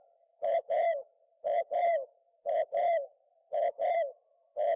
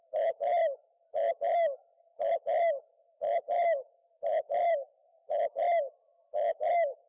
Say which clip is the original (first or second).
second